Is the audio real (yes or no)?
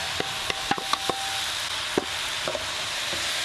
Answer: yes